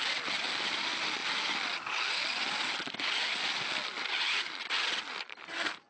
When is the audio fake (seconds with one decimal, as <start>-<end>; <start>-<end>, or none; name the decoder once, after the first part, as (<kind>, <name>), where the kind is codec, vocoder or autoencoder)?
none